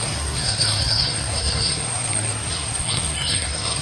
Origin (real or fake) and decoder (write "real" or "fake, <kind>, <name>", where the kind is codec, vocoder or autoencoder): fake, codec, SNAC